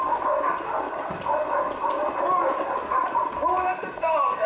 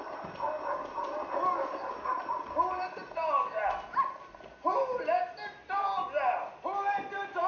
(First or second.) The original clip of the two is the second